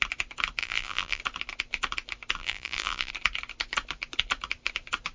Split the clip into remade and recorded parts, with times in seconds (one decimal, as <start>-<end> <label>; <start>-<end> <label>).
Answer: 0.0-0.6 recorded; 0.6-1.2 remade; 1.2-2.4 recorded; 2.4-3.1 remade; 3.1-5.1 recorded